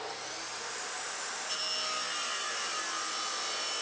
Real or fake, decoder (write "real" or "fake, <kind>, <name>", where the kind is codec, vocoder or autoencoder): real